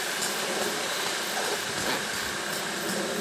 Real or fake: real